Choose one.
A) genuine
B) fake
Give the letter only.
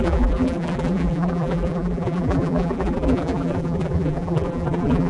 B